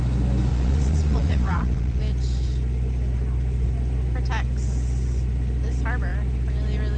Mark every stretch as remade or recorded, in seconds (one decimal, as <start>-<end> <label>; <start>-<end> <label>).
0.0-0.5 recorded; 0.5-2.0 remade; 2.0-7.0 recorded